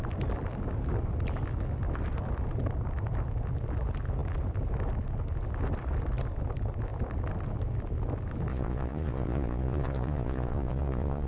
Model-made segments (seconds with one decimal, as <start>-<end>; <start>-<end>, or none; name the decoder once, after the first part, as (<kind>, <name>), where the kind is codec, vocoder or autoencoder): 8.5-11.3 (vocoder, Vocos)